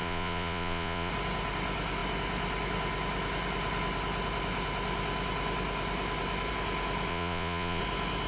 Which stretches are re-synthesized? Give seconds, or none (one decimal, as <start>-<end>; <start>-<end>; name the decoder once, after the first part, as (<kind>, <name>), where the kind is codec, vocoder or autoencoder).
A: 0.0-1.1 (vocoder, Vocos); 7.1-7.8